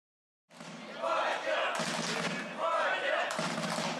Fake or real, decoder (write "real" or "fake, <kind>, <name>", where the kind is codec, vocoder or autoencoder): real